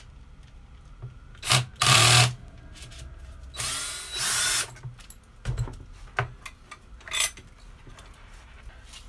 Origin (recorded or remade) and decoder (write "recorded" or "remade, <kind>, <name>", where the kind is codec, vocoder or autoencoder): recorded